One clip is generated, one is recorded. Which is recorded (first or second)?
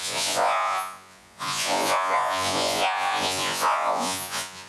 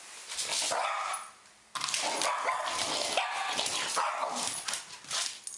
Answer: second